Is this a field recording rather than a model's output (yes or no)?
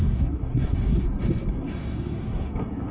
no